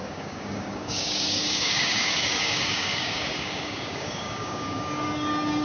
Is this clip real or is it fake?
fake